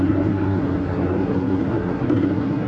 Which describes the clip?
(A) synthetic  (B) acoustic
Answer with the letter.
A